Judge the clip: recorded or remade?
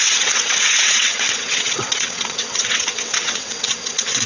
remade